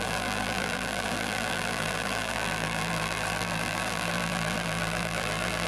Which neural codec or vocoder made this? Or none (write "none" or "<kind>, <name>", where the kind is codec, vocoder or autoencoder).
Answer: vocoder, BigVGAN v2